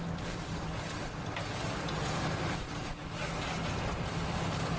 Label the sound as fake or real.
real